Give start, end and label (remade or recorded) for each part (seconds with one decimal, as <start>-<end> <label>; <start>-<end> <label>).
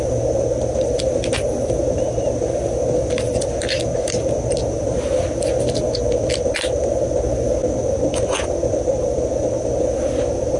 0.0-10.6 recorded